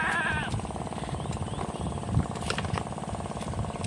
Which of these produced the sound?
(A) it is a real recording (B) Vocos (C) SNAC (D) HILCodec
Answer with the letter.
A